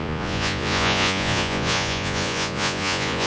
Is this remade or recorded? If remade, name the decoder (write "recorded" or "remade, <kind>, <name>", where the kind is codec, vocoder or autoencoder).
remade, vocoder, Vocos